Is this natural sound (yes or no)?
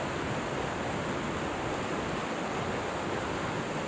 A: yes